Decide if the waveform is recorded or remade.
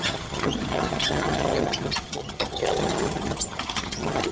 remade